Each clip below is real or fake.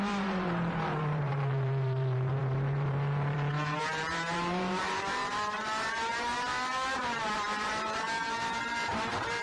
fake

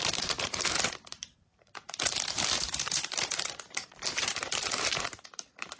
fake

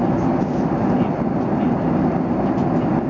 real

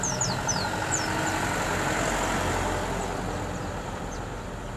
real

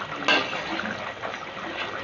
real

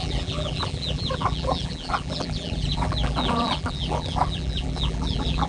fake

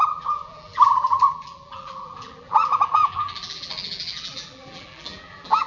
fake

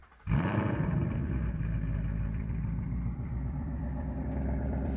fake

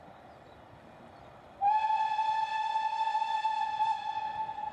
real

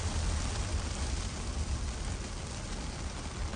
real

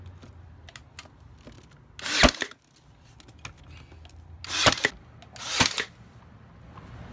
real